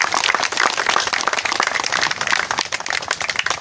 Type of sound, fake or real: real